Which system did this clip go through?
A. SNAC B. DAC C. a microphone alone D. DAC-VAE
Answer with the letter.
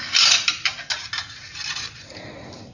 C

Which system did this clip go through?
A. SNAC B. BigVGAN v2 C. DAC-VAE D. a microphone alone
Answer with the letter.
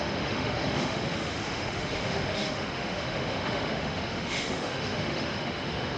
C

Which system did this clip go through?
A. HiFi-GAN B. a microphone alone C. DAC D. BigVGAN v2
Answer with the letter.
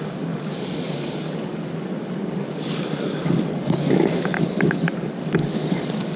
C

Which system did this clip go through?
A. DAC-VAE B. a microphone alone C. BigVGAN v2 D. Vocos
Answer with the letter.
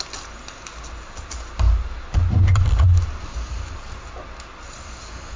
B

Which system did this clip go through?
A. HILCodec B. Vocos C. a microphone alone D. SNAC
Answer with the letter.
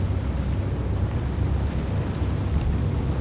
C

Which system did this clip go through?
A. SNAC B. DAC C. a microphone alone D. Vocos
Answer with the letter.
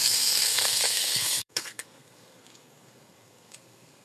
A